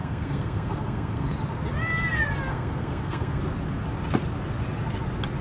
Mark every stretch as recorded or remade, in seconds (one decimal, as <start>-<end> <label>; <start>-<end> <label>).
0.0-1.3 remade; 1.3-2.5 recorded; 2.5-3.4 remade; 3.4-5.4 recorded